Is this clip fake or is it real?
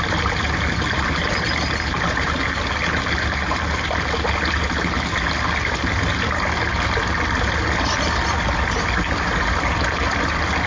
real